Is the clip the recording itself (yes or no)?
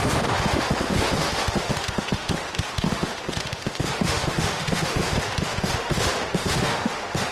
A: no